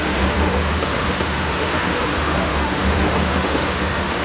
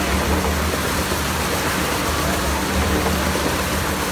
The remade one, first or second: first